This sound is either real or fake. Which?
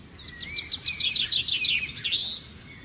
real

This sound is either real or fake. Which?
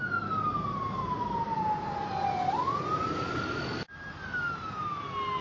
real